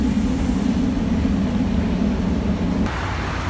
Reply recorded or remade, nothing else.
recorded